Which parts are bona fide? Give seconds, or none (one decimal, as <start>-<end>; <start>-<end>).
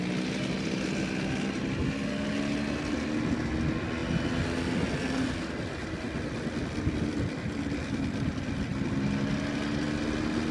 0.0-10.5